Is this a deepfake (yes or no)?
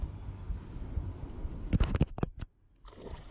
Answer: no